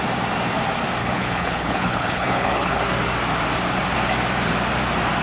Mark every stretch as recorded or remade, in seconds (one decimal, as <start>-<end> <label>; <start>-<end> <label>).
0.0-1.0 recorded; 1.0-2.8 remade; 2.8-5.2 recorded